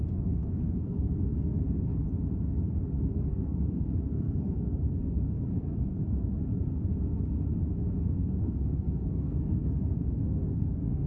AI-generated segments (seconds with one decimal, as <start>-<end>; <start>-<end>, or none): 0.0-1.9; 3.0-6.3; 8.0-11.1